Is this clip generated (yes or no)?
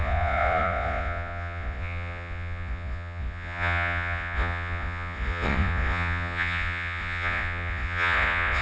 yes